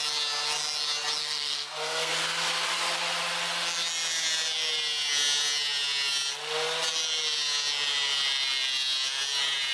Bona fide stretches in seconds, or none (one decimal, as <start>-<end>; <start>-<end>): 0.0-1.2; 2.1-9.7